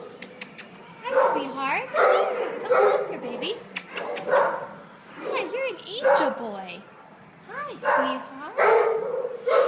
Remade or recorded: recorded